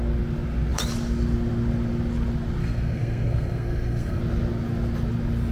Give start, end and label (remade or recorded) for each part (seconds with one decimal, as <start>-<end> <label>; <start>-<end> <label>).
0.0-2.6 recorded; 2.6-4.2 remade; 4.2-5.5 recorded